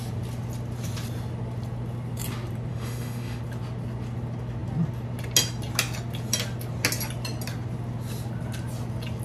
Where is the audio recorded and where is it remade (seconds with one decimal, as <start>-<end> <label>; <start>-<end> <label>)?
0.0-2.7 recorded; 2.7-3.4 remade; 3.4-9.2 recorded

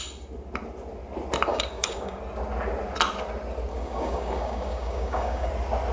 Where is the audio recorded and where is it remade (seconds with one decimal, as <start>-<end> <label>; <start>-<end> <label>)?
0.0-1.5 recorded; 1.5-2.2 remade; 2.2-3.7 recorded; 3.7-5.5 remade; 5.5-5.9 recorded

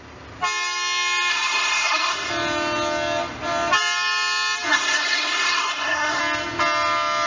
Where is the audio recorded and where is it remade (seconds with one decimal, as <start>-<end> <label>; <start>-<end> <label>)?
0.0-1.3 recorded; 1.3-2.3 remade; 2.3-4.7 recorded; 4.7-6.2 remade; 6.2-7.3 recorded

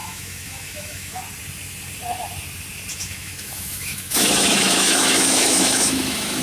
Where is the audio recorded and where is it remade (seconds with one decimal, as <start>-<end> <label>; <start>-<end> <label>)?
0.0-1.2 remade; 1.2-2.9 recorded; 2.9-6.4 remade

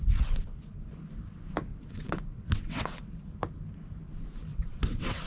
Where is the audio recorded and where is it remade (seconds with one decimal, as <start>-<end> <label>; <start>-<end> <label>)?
0.0-1.7 recorded; 1.7-3.2 remade; 3.2-4.5 recorded; 4.5-5.3 remade